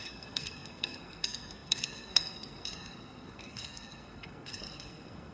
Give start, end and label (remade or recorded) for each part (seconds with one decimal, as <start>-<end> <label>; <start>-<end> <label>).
0.0-5.3 remade

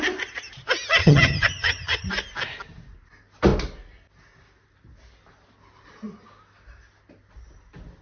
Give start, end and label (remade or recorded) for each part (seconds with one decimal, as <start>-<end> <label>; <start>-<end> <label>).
0.0-1.0 recorded; 1.0-2.1 remade; 2.1-8.0 recorded

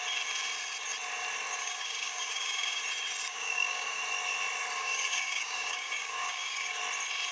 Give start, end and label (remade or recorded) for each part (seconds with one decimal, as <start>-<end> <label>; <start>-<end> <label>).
0.0-1.6 recorded; 1.6-2.8 remade; 2.8-3.3 recorded; 3.3-4.0 remade; 4.0-4.8 recorded; 4.8-6.8 remade; 6.8-7.3 recorded